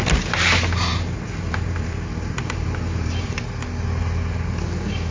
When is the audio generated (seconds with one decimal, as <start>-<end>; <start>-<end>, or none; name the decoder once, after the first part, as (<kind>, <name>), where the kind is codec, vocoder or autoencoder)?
0.9-3.4 (vocoder, BigVGAN v2)